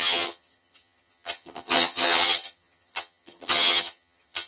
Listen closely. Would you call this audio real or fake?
fake